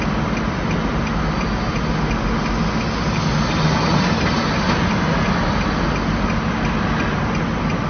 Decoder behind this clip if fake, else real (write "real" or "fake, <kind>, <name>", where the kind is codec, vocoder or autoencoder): real